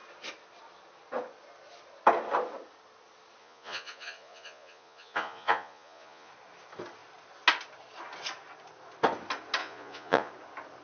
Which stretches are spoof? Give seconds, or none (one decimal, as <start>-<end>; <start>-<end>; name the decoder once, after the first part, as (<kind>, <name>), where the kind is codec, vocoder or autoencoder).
3.4-6.3 (vocoder, Vocos); 9.6-10.3